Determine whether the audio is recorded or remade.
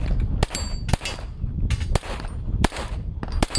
recorded